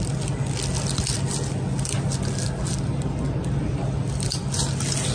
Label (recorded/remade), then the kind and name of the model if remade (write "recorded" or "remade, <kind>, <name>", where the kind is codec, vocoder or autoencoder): recorded